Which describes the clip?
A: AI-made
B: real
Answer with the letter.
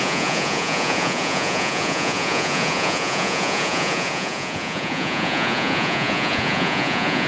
A